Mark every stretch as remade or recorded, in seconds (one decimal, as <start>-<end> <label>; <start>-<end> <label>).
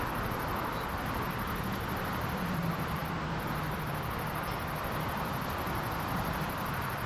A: 0.0-0.9 remade; 0.9-1.9 recorded; 1.9-7.1 remade